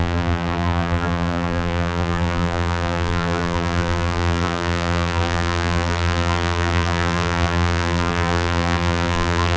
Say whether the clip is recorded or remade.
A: remade